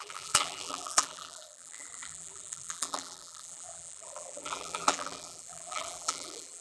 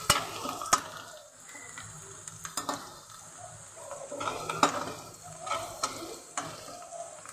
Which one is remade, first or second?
first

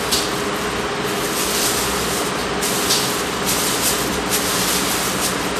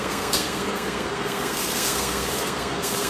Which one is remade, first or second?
second